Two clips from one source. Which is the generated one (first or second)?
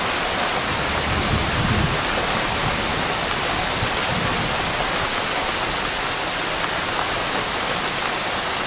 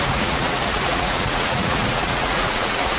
second